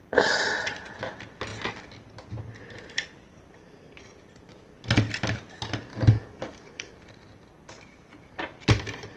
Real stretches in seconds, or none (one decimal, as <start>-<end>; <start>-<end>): 0.0-5.9; 6.9-9.2